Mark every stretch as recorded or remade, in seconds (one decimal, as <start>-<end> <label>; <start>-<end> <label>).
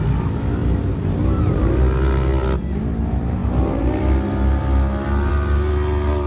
0.0-6.3 recorded